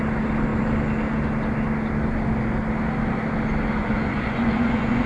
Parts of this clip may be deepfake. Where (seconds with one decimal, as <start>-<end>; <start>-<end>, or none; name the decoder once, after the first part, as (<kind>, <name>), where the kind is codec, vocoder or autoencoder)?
3.8-5.1 (vocoder, Vocos)